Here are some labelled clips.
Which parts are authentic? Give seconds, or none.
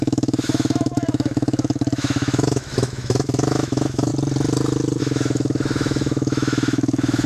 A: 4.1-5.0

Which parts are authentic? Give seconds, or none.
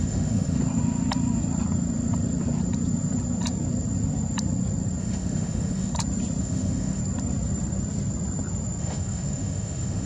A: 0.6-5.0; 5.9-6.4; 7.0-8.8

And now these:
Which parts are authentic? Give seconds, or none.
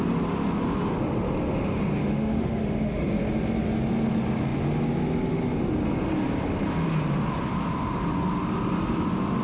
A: 0.0-2.0; 3.1-9.4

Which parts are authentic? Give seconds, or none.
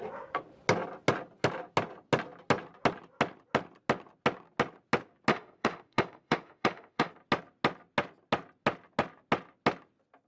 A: 0.0-5.3; 7.1-10.3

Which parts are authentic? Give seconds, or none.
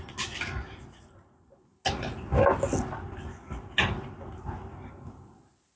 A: 0.0-5.8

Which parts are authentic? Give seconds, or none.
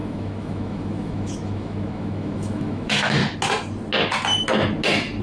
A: 3.2-5.2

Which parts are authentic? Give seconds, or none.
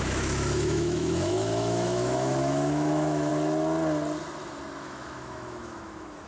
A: 3.3-4.8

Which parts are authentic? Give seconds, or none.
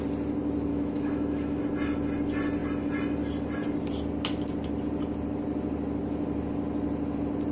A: 0.0-0.7; 1.6-7.5